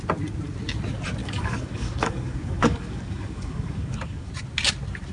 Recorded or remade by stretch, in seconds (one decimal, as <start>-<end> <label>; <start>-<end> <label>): 0.0-1.2 recorded; 1.2-4.3 remade; 4.3-5.1 recorded